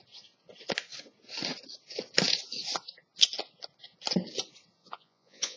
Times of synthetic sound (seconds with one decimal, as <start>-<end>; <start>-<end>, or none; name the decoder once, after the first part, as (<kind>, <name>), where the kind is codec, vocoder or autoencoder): 4.8-5.6 (vocoder, Vocos)